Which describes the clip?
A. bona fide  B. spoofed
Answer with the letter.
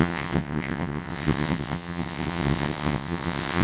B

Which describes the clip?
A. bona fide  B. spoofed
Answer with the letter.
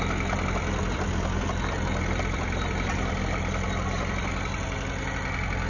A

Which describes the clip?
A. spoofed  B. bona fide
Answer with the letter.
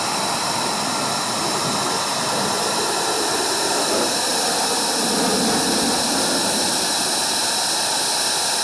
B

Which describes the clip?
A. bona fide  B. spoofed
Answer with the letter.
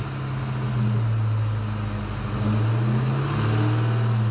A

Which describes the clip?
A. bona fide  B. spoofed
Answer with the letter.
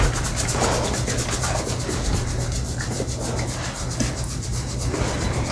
A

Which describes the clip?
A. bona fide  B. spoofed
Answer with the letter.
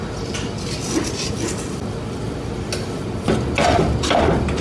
A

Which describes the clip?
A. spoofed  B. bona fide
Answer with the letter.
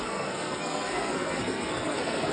A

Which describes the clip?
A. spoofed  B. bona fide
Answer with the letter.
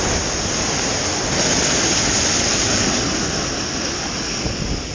B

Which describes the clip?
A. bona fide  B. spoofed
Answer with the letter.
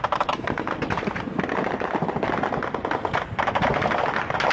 A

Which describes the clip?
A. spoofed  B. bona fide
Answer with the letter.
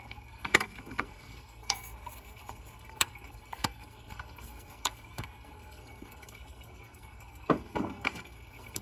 A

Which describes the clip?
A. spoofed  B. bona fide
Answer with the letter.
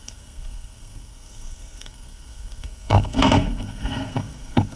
A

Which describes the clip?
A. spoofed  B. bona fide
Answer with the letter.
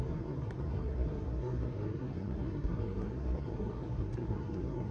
A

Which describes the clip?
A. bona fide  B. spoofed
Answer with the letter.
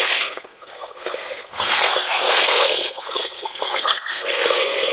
B